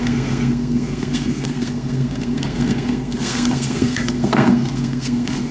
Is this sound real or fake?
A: fake